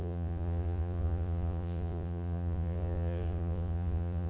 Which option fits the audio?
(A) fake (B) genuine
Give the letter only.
A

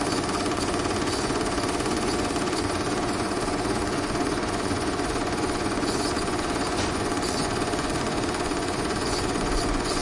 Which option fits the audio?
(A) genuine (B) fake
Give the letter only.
B